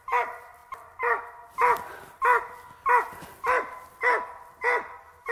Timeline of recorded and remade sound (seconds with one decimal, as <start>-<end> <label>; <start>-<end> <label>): 0.0-5.3 recorded